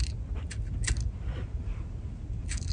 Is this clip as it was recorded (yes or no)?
yes